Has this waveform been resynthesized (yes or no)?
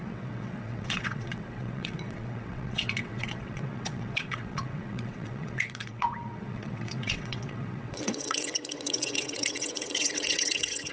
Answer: yes